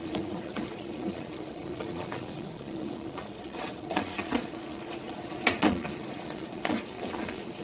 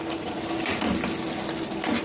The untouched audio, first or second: second